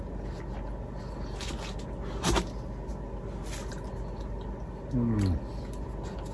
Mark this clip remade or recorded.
recorded